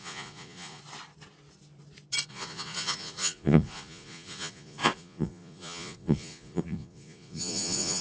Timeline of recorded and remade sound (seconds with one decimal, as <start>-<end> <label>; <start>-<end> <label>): 0.0-0.8 remade; 0.8-2.3 recorded; 2.3-8.0 remade